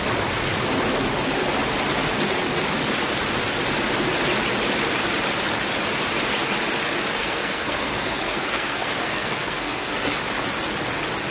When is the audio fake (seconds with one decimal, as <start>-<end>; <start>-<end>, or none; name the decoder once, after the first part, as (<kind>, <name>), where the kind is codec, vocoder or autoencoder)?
7.2-10.2 (codec, SNAC)